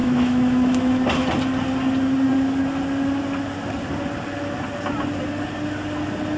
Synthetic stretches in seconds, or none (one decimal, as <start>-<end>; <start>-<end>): 0.0-0.9